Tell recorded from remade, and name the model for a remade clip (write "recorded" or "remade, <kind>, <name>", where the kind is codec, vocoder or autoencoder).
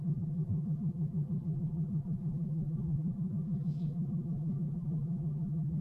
remade, vocoder, BigVGAN v2